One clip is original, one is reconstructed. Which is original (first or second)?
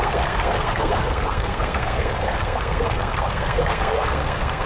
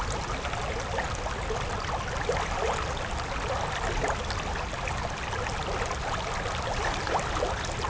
second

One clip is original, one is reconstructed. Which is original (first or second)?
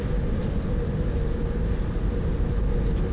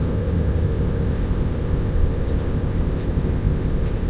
first